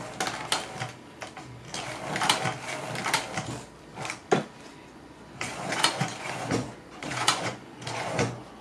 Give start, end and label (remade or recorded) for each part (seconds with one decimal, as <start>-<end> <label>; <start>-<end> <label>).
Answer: 0.0-4.7 recorded; 4.7-8.6 remade